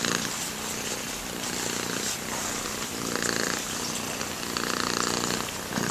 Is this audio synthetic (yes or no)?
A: no